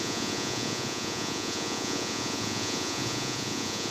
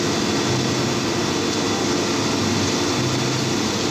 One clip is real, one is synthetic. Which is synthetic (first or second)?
first